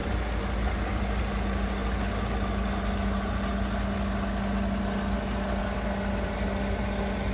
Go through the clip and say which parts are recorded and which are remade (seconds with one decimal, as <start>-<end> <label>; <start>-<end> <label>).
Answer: 0.0-1.2 remade; 1.2-7.3 recorded